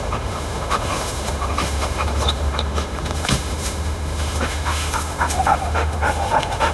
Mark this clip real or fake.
fake